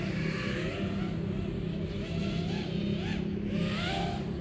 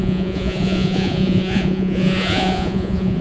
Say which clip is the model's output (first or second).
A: second